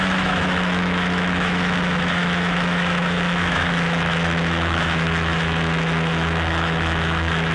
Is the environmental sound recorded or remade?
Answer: remade